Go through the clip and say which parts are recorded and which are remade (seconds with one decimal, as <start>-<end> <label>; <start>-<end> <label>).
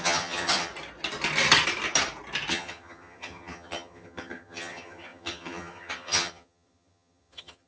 0.0-0.7 remade; 0.7-2.5 recorded; 2.5-7.7 remade